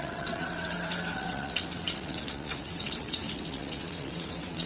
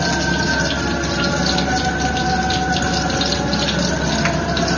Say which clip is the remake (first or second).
first